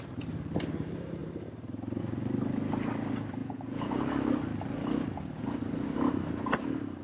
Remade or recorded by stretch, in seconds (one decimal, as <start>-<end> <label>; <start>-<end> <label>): 0.0-3.4 recorded; 3.4-4.0 remade; 4.0-7.0 recorded